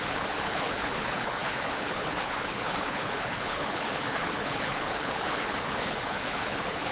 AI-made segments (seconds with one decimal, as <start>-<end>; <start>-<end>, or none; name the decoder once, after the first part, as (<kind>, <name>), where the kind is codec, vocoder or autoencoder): 0.0-6.9 (codec, HILCodec)